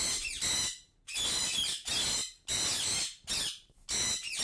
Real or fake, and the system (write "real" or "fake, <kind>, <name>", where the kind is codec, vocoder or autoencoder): real